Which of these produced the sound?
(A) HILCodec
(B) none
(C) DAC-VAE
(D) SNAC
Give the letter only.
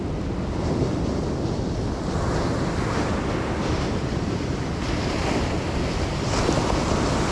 B